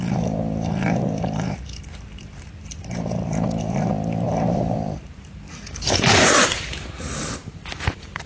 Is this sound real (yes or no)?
no